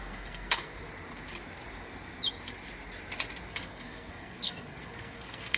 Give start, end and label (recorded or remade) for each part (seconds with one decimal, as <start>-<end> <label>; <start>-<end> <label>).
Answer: 0.0-0.7 remade; 0.7-3.5 recorded; 3.5-5.6 remade